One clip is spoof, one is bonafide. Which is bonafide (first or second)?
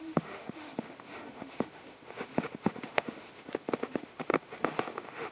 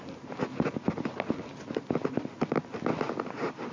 second